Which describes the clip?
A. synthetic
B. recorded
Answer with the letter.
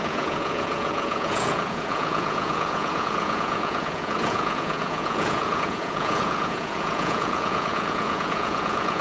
A